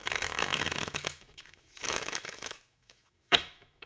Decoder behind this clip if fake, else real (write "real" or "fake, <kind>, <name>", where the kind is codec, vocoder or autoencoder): fake, autoencoder, DAC-VAE